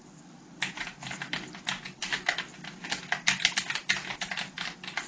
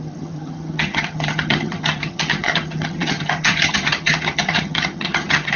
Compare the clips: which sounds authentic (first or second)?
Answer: first